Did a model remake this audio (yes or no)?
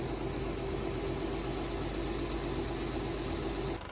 no